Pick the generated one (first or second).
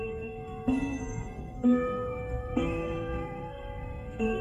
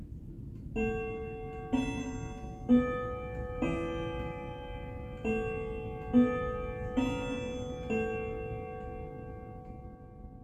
first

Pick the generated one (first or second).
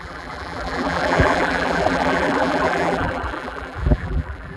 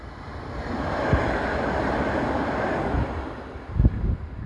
first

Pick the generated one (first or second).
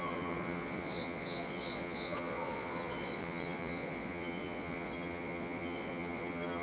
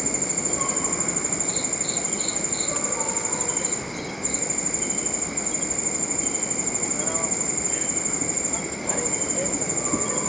first